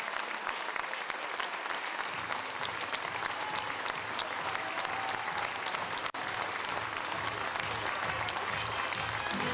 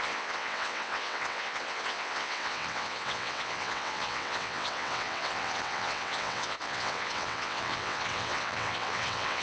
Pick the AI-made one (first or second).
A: second